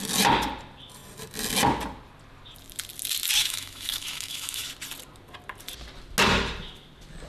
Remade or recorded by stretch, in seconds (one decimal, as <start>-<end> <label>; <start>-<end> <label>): 0.0-3.4 recorded; 3.4-4.7 remade; 4.7-7.3 recorded